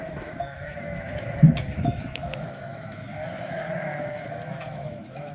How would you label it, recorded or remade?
remade